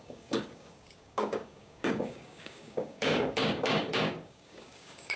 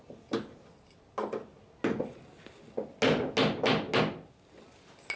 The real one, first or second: second